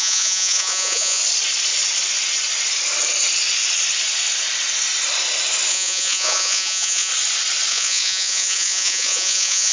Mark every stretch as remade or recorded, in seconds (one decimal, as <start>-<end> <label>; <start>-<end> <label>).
0.0-1.2 remade; 1.2-5.7 recorded; 5.7-7.1 remade; 7.1-7.7 recorded; 7.7-9.7 remade